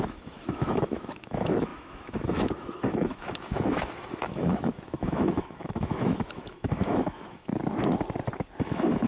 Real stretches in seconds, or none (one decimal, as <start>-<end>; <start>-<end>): 7.5-8.6